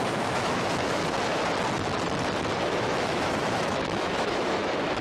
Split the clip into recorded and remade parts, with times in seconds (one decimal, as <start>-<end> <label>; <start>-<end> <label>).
0.0-1.0 remade; 1.0-2.6 recorded; 2.6-5.0 remade

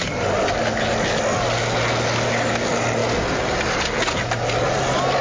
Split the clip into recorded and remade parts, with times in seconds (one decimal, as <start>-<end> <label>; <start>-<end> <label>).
0.0-5.2 recorded

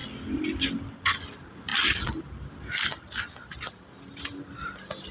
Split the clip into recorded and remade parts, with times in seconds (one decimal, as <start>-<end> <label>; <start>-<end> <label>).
0.0-0.7 recorded; 0.7-5.1 remade

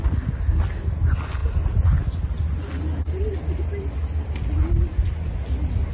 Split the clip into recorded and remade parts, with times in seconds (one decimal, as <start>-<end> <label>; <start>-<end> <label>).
0.0-5.9 recorded

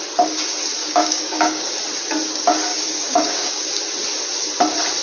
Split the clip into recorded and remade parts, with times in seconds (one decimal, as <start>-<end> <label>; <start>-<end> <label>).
0.0-0.8 recorded; 0.8-1.7 remade; 1.7-2.7 recorded; 2.7-3.7 remade; 3.7-5.0 recorded